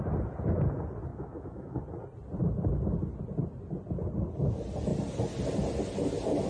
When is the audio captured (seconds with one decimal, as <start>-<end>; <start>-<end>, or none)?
0.0-1.1; 1.8-6.5